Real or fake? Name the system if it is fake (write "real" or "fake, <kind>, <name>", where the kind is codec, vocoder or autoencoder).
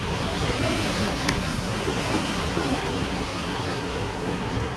fake, codec, SNAC